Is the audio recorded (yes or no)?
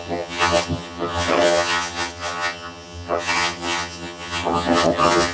no